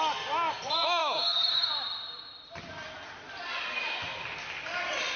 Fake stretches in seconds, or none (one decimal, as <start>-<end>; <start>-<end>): 1.0-1.7